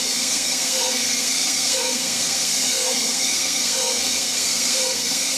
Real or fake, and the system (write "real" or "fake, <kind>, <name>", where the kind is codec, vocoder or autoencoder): fake, codec, SNAC